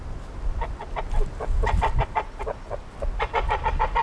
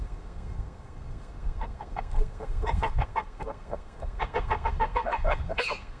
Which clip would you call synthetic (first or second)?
second